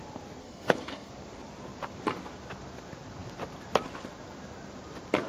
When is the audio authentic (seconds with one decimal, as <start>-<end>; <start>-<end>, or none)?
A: 0.0-0.4; 1.1-5.3